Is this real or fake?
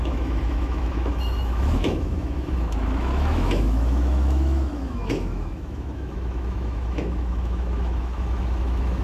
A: fake